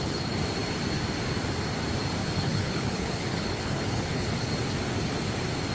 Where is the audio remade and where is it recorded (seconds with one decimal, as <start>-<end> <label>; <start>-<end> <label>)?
0.0-2.2 recorded; 2.2-4.5 remade; 4.5-5.7 recorded